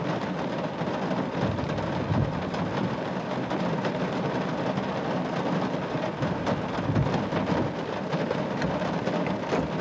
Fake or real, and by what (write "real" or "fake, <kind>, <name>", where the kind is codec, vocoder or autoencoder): real